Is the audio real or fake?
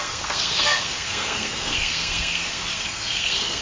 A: fake